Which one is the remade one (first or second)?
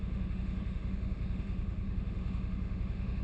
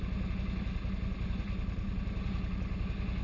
first